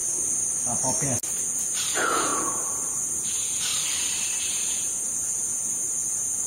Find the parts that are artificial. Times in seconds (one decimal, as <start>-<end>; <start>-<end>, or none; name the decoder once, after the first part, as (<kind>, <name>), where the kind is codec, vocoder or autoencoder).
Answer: 1.3-3.7 (vocoder, Vocos); 4.4-6.5

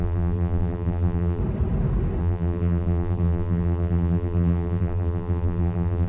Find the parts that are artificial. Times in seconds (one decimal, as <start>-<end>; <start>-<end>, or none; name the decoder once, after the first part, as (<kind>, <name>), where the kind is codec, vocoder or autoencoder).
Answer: 0.0-1.4 (vocoder, BigVGAN v2); 2.2-6.1

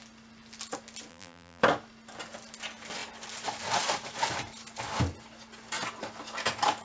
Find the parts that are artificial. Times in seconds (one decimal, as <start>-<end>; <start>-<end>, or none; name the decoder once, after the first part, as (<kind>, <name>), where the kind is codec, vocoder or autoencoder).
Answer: 1.1-1.6 (vocoder, BigVGAN v2)

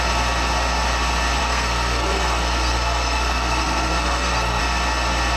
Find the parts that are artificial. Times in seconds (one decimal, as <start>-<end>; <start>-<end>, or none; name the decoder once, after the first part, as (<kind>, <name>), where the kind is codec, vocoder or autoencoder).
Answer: 1.4-4.6 (codec, SNAC)

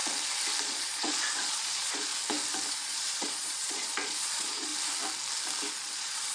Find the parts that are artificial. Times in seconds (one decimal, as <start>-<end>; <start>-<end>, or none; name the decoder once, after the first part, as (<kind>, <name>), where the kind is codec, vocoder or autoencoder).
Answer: 0.6-2.1 (vocoder, Vocos); 2.7-4.7; 5.7-6.3

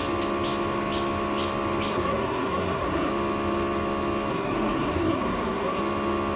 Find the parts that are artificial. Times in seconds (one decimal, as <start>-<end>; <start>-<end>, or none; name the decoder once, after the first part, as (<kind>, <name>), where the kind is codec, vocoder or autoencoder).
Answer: 1.9-3.1 (codec, SNAC); 4.3-5.8

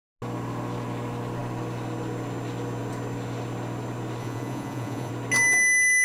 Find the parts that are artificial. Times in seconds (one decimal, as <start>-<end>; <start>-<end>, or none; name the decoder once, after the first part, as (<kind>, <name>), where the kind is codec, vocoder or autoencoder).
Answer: 4.2-5.1 (vocoder, Vocos)